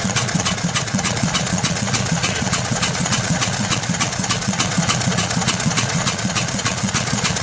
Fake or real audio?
fake